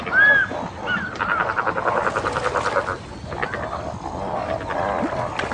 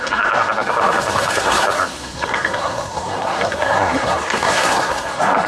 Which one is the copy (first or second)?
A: second